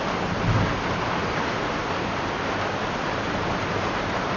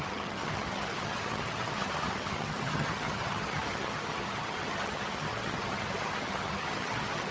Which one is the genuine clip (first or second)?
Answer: first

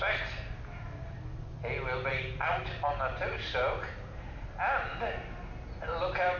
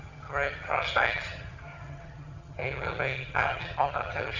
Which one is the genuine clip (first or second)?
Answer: first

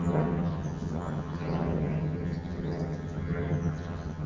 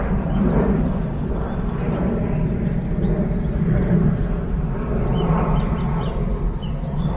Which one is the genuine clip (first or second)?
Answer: second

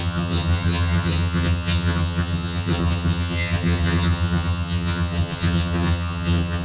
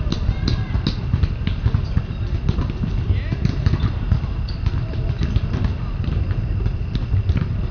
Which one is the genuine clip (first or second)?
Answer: second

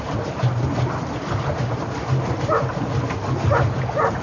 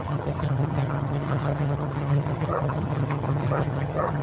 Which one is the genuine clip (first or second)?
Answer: first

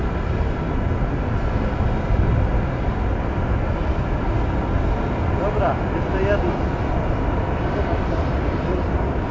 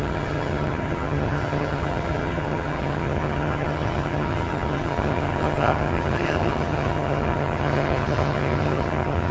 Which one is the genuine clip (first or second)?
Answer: first